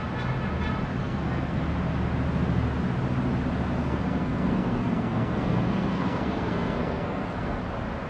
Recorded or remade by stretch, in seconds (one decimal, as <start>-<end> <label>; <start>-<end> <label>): 0.0-1.0 recorded; 1.0-1.6 remade; 1.6-3.8 recorded; 3.8-7.6 remade; 7.6-8.1 recorded